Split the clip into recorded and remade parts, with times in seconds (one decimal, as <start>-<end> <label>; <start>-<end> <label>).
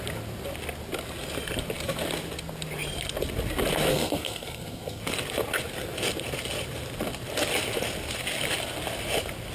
0.0-3.9 recorded; 3.9-5.0 remade; 5.0-9.5 recorded